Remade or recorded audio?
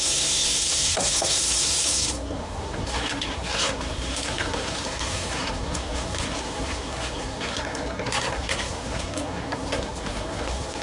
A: remade